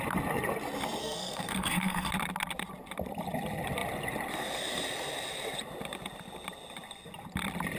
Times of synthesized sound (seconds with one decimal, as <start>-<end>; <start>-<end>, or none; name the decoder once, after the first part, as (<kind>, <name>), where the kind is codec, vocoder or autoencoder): 1.0-2.1 (codec, SNAC)